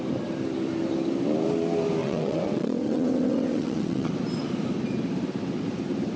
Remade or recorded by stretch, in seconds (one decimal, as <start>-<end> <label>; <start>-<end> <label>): 0.0-2.0 recorded; 2.0-4.1 remade; 4.1-6.2 recorded